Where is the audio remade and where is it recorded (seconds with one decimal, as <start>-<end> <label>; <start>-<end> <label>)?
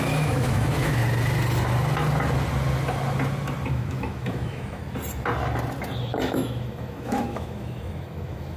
0.0-1.0 remade; 1.0-3.7 recorded; 3.7-4.8 remade; 4.8-6.0 recorded; 6.0-8.6 remade